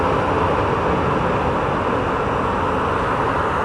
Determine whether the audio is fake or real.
real